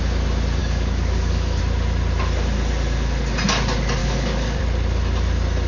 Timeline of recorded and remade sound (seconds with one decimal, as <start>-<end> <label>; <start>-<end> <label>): 0.0-0.6 recorded; 0.6-1.6 remade; 1.6-4.0 recorded; 4.0-4.6 remade; 4.6-5.7 recorded